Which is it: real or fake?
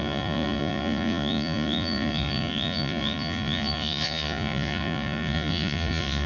fake